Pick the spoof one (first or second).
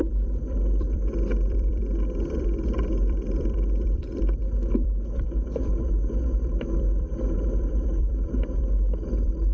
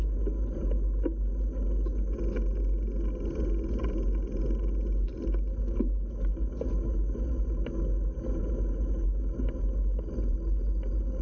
first